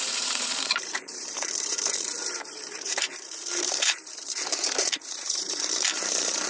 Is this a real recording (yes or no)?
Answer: no